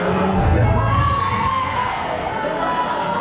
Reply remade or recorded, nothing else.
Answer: remade